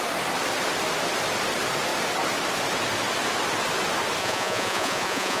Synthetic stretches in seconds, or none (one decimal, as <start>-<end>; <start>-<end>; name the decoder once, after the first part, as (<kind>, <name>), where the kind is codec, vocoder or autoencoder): 4.2-5.4 (vocoder, Vocos)